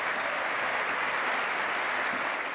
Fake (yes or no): no